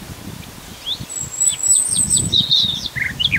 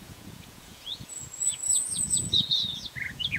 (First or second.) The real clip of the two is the first